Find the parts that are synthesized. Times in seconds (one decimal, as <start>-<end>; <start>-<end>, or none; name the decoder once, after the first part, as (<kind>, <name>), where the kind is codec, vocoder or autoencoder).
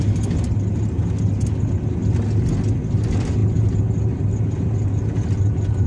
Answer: none